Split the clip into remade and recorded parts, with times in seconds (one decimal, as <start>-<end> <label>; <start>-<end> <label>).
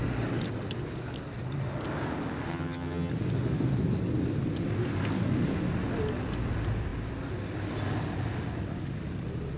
0.0-2.5 recorded; 2.5-3.1 remade; 3.1-9.6 recorded